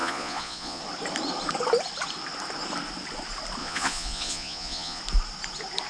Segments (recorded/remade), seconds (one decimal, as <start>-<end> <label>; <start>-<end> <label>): 0.0-0.8 remade; 0.8-3.6 recorded; 3.6-5.0 remade; 5.0-5.9 recorded